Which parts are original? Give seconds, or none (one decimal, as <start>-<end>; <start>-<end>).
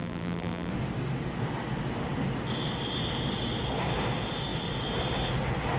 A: 0.7-5.8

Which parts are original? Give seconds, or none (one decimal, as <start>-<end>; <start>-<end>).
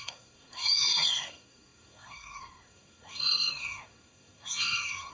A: none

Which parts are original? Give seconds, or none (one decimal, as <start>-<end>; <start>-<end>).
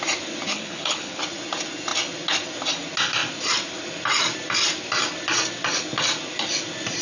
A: 0.0-0.5; 1.2-7.0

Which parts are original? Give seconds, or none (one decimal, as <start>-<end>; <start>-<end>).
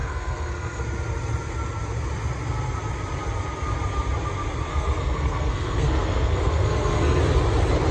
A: 0.8-4.7; 7.2-7.9